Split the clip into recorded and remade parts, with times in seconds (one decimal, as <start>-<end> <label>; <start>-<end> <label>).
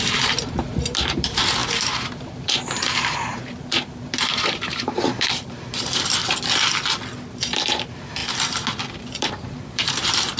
0.0-6.2 remade; 6.2-7.3 recorded; 7.3-8.2 remade; 8.2-9.2 recorded; 9.2-10.4 remade